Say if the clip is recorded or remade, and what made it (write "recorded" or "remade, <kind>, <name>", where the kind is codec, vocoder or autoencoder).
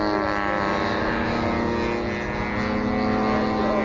recorded